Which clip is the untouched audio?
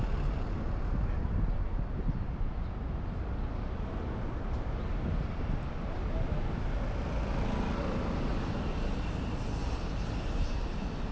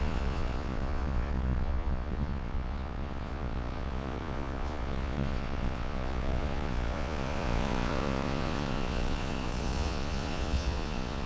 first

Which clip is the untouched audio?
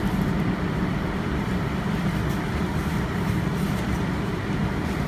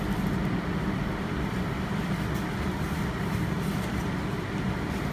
second